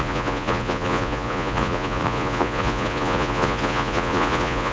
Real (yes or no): no